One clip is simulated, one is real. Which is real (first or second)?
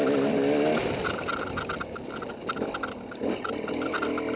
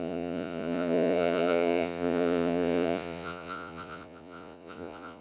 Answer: first